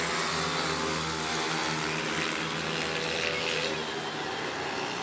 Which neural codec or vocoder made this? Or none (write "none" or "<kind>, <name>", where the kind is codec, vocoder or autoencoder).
none